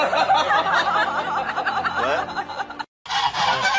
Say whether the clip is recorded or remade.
recorded